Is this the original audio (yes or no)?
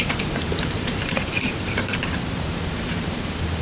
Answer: no